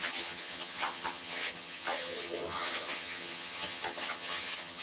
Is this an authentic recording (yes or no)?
no